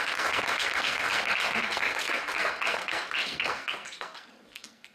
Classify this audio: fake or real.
fake